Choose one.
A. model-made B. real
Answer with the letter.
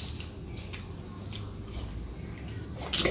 B